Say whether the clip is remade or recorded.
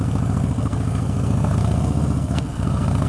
remade